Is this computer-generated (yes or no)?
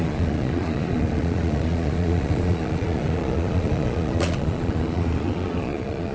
yes